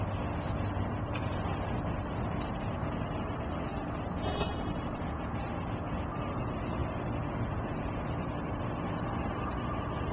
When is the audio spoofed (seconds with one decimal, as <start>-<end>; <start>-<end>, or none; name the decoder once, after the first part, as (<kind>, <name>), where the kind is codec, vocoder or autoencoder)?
4.3-5.0 (vocoder, BigVGAN v2)

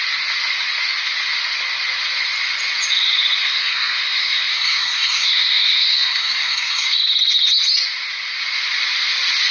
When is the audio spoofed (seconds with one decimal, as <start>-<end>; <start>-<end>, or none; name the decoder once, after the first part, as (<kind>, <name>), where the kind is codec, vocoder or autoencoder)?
3.4-7.0 (codec, SNAC)